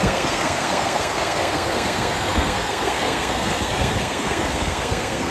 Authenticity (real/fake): fake